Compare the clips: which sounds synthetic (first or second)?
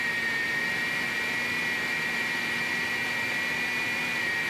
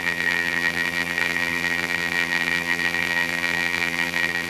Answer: second